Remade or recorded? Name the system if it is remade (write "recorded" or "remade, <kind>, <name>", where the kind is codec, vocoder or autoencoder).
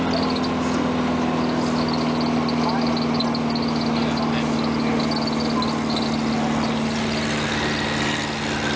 recorded